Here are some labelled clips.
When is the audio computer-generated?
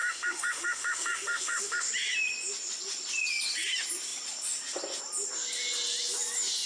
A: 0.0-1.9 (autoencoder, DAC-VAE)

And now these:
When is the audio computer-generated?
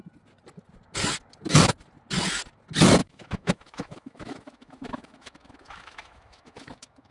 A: 3.0-7.1 (autoencoder, DAC-VAE)